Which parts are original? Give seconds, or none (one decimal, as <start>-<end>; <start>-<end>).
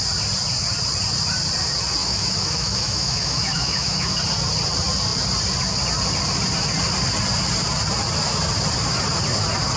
0.0-2.0; 4.1-9.8